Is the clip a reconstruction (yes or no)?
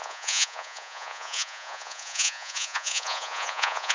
yes